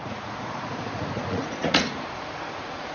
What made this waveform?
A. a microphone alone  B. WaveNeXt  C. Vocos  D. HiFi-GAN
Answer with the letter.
C